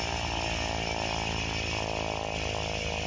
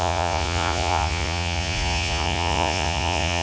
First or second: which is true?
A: first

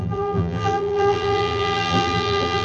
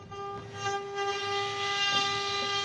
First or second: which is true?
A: second